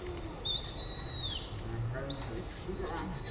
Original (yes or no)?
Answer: yes